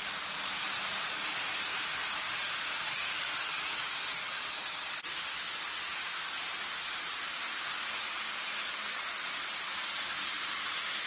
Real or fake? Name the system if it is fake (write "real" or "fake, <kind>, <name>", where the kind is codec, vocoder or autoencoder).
real